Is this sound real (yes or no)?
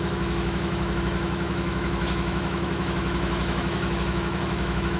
no